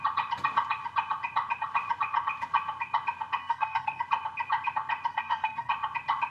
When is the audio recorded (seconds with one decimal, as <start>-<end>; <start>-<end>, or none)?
0.0-3.4; 4.0-5.1; 5.7-6.3